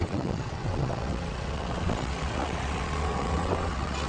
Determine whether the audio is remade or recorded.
remade